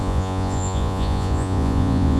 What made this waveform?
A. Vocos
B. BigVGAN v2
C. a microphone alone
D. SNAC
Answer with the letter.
A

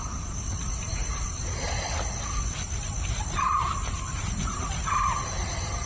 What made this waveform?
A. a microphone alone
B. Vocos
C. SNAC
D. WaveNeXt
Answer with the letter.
A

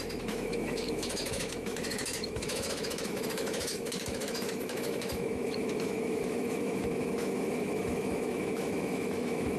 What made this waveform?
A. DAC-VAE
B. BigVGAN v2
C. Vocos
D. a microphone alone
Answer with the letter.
A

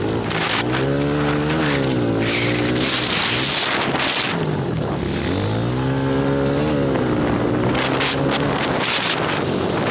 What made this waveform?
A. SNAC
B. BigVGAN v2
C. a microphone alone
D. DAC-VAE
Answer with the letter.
C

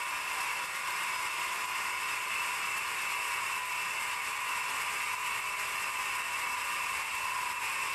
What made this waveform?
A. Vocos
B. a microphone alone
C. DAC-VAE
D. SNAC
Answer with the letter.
B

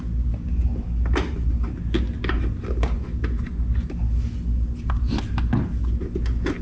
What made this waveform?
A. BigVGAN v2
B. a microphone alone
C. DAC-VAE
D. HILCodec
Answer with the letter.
B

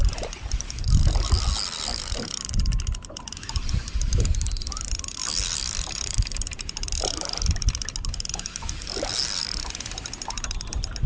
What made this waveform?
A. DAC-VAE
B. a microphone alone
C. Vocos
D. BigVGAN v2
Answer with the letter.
B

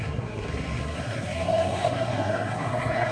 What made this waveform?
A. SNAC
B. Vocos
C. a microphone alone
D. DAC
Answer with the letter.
A